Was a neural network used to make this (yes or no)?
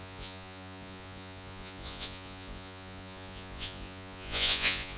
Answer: yes